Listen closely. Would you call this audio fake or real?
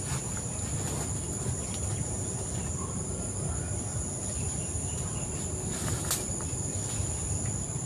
real